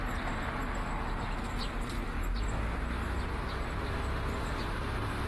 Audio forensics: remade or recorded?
recorded